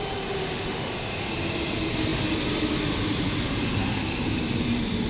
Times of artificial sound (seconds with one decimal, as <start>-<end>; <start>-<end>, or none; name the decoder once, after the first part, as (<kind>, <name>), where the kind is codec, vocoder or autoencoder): 0.5-1.2 (autoencoder, DAC-VAE)